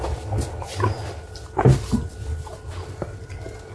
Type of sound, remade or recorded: recorded